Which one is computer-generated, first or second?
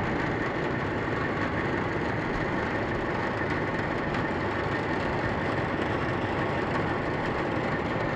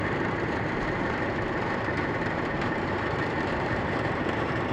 second